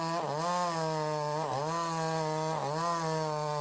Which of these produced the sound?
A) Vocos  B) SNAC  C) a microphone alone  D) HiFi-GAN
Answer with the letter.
C